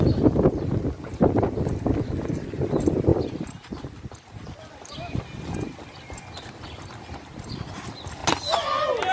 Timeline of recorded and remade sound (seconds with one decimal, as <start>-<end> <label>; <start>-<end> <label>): 0.0-3.1 recorded; 3.1-7.3 remade; 7.3-9.1 recorded

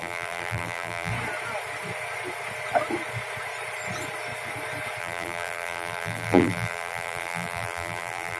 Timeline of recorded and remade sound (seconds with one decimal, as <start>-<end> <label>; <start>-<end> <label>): 0.0-1.1 remade; 1.1-5.0 recorded; 5.0-8.4 remade

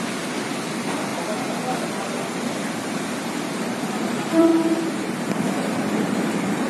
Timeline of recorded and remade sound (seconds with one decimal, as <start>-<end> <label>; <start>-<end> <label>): 0.0-1.1 remade; 1.1-2.0 recorded; 2.0-4.5 remade; 4.5-5.2 recorded; 5.2-6.7 remade

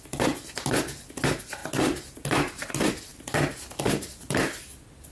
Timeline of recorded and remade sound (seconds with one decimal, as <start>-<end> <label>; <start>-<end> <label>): 0.0-3.1 recorded; 3.1-3.7 remade; 3.7-5.1 recorded